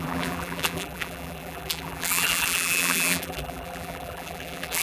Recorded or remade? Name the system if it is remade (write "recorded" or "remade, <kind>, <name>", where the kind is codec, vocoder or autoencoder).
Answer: remade, vocoder, BigVGAN v2